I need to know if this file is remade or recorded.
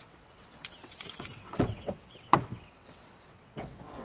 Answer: remade